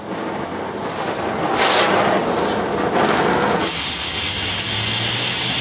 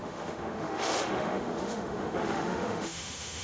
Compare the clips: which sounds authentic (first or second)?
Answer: first